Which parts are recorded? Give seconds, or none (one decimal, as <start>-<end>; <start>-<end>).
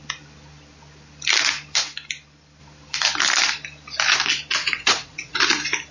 0.0-4.6; 5.4-5.9